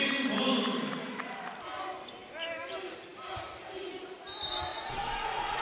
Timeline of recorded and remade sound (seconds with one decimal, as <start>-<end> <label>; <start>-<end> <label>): 0.0-4.7 recorded; 4.7-5.6 remade